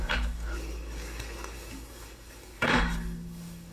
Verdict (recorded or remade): remade